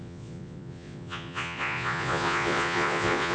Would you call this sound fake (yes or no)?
yes